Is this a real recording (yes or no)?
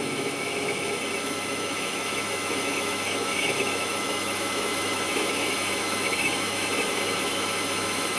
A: no